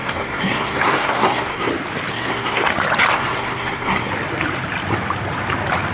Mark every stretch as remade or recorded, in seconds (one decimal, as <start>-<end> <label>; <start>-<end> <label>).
0.0-1.7 remade; 1.7-2.1 recorded; 2.1-2.7 remade; 2.7-3.1 recorded; 3.1-4.1 remade; 4.1-5.9 recorded